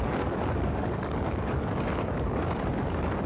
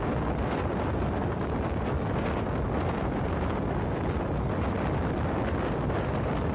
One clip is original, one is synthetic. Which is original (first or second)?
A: second